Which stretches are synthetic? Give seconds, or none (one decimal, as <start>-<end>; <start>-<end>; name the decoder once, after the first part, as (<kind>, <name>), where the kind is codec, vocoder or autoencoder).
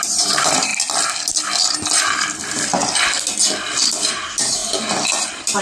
0.0-0.7 (vocoder, BigVGAN v2); 4.1-4.6